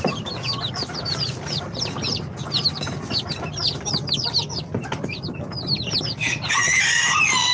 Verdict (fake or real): real